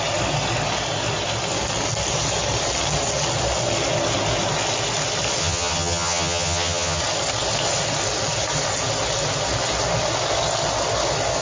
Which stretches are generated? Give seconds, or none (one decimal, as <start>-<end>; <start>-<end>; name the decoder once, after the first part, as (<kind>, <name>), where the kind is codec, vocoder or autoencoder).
5.4-7.0 (vocoder, HiFi-GAN)

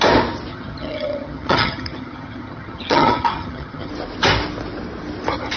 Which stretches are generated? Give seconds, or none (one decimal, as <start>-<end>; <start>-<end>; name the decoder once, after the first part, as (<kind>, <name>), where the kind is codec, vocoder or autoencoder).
0.5-3.9 (vocoder, HiFi-GAN)

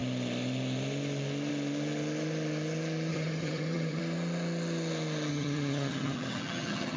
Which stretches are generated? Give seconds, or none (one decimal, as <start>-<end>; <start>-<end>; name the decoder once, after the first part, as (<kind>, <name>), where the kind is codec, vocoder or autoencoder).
3.1-4.0 (vocoder, HiFi-GAN); 5.3-7.0